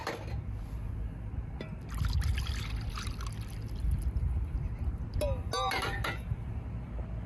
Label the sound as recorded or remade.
recorded